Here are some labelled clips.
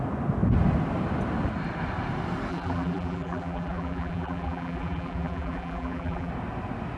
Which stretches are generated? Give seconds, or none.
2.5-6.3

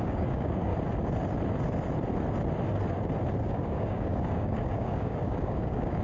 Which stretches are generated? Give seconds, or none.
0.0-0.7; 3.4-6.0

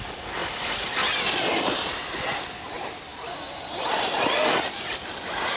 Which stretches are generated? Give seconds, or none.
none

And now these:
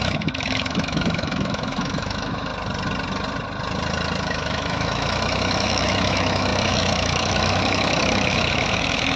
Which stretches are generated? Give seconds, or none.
0.0-2.5; 4.2-9.2

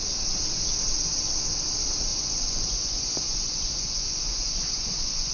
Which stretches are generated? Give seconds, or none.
2.1-5.3

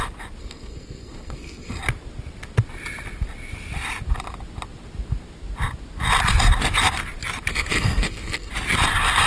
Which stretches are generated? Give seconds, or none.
0.4-1.8; 7.5-8.5

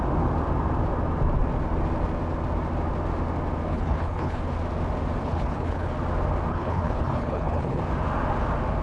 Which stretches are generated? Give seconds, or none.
3.7-4.4; 5.2-5.9; 6.5-7.8